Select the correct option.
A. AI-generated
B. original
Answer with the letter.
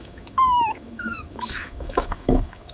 A